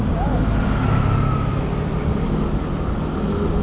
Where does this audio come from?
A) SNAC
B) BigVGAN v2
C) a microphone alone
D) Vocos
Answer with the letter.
C